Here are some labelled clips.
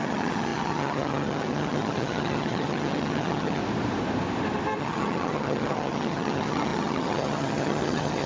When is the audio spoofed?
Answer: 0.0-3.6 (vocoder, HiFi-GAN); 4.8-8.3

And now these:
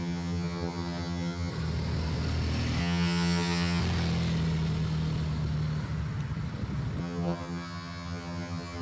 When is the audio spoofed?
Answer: 0.0-1.5 (vocoder, HiFi-GAN); 2.8-3.8; 7.0-8.8

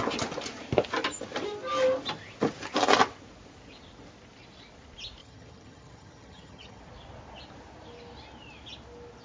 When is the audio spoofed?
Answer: 5.2-6.8 (vocoder, HiFi-GAN)

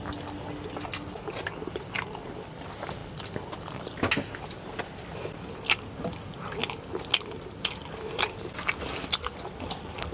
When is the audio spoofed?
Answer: none